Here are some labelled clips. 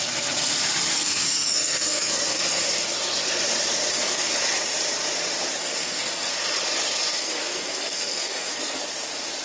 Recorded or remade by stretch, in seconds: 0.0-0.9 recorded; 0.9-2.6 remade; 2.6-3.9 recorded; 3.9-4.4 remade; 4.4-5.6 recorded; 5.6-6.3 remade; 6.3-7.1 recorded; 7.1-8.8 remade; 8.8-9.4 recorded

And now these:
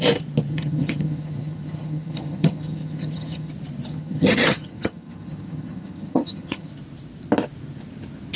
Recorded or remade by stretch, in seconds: 0.0-0.5 recorded; 0.5-3.5 remade; 3.5-3.9 recorded; 3.9-6.7 remade; 6.7-8.4 recorded

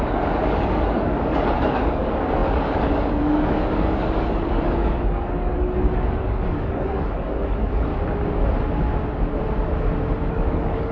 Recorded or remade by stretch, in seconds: 0.0-7.9 remade; 7.9-10.3 recorded; 10.3-10.9 remade

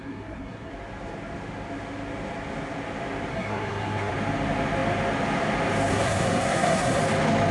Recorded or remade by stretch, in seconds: 0.0-0.7 remade; 0.7-3.3 recorded; 3.3-4.1 remade; 4.1-5.9 recorded; 5.9-7.0 remade; 7.0-7.5 recorded